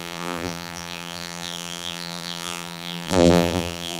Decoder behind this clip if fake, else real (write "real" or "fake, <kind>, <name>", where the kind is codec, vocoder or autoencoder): fake, vocoder, BigVGAN v2